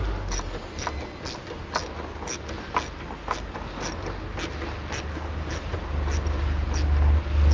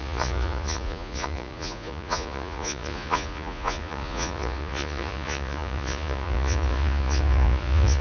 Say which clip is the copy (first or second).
second